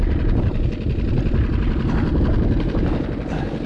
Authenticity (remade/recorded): recorded